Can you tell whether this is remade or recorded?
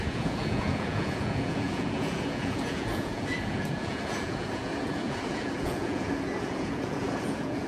remade